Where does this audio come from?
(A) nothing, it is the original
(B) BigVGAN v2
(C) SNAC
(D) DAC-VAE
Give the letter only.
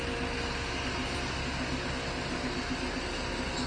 A